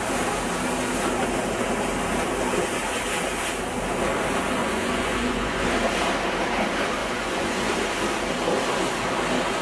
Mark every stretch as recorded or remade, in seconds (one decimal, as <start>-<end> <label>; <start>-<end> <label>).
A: 0.0-4.6 recorded; 4.6-5.7 remade; 5.7-7.0 recorded; 7.0-7.7 remade; 7.7-9.6 recorded